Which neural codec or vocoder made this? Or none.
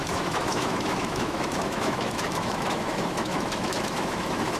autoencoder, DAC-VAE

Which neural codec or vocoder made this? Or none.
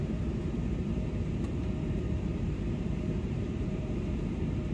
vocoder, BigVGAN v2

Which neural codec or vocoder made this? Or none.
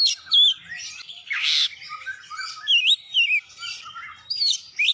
none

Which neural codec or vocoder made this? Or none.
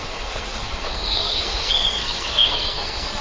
codec, SNAC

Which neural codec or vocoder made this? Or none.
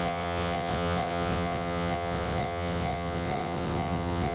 vocoder, WaveNeXt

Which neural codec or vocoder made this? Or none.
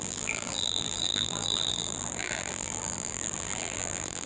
vocoder, BigVGAN v2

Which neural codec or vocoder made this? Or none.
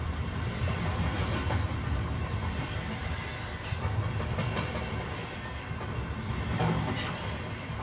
vocoder, BigVGAN v2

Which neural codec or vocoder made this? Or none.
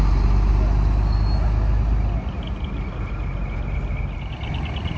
none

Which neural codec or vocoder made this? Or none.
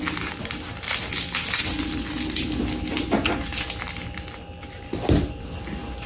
none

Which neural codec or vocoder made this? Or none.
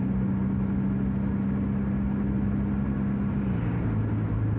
none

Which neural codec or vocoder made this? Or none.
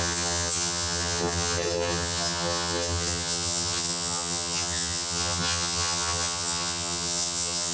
vocoder, HiFi-GAN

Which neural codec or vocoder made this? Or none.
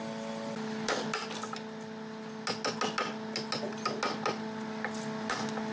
none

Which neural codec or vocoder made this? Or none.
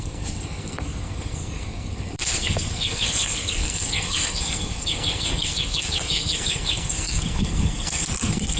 codec, SNAC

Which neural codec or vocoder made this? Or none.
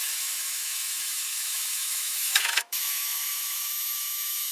autoencoder, DAC-VAE